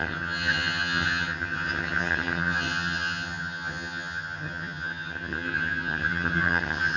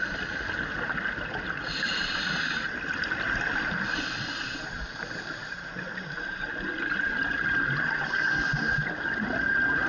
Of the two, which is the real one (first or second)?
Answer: second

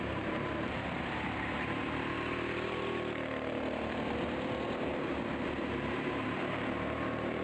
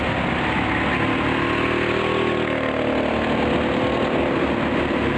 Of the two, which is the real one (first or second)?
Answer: second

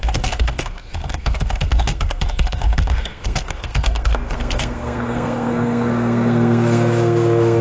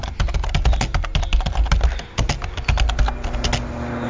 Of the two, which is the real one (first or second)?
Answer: second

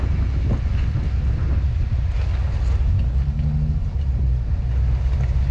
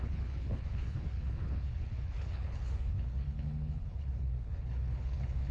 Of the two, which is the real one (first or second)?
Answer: first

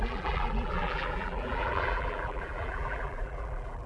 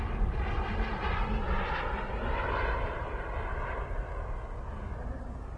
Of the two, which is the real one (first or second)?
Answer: second